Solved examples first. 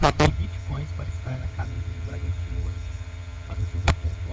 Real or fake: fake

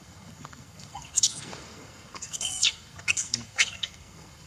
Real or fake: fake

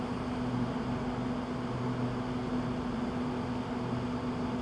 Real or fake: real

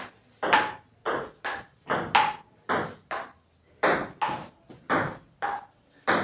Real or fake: real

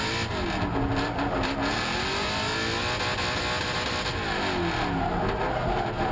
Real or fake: real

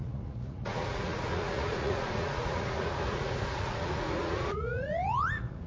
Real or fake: fake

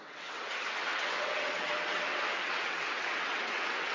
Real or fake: fake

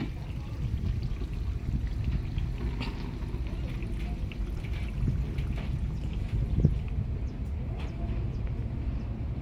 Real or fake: real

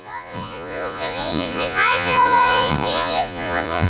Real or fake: fake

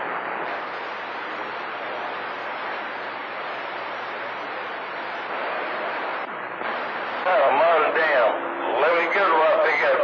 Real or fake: fake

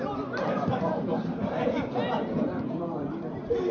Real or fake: real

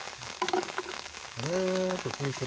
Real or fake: fake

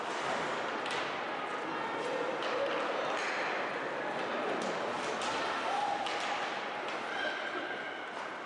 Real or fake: real